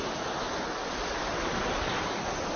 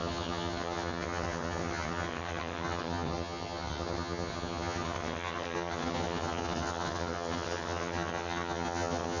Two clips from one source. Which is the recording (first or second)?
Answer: first